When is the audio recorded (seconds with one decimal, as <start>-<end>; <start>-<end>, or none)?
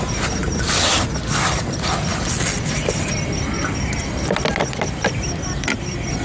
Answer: 0.0-0.4; 1.0-6.2